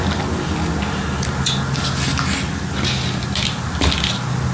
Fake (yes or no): no